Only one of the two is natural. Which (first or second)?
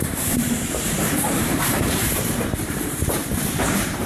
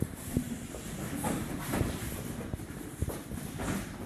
second